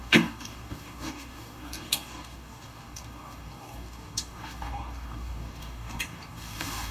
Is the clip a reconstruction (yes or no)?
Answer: yes